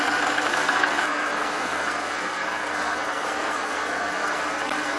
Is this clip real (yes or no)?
no